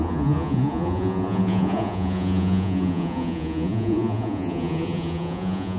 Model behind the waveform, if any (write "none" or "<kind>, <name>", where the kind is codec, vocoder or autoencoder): vocoder, Vocos